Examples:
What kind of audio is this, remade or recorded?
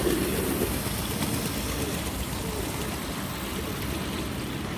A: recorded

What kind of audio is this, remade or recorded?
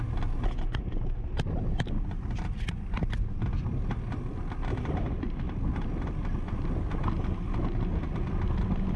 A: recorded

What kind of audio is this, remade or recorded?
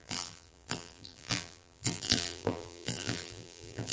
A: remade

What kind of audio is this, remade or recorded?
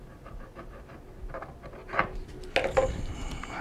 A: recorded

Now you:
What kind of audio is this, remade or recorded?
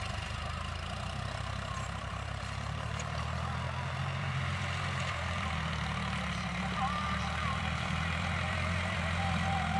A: remade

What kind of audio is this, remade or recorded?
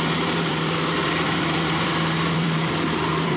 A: remade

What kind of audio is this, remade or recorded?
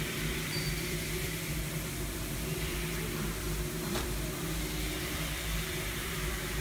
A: remade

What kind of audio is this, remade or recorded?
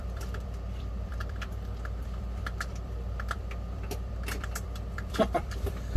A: remade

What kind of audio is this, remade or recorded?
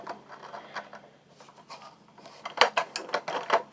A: recorded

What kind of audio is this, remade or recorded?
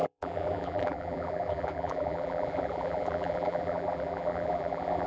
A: remade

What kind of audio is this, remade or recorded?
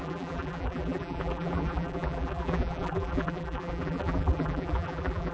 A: remade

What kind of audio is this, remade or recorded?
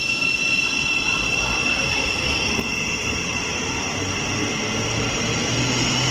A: recorded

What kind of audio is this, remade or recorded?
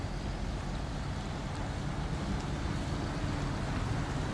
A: recorded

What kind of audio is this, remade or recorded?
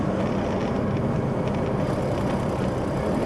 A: recorded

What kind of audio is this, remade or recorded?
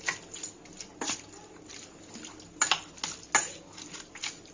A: recorded